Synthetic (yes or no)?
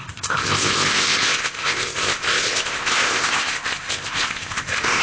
yes